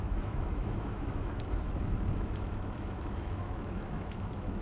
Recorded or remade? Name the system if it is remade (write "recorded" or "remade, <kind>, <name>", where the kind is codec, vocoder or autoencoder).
remade, autoencoder, DAC-VAE